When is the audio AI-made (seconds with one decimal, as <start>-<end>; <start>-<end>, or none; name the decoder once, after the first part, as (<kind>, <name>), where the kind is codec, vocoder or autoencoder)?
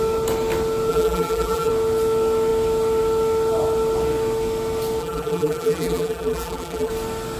0.9-1.7 (vocoder, BigVGAN v2); 5.0-6.9